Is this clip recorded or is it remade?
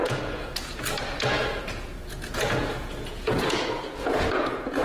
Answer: remade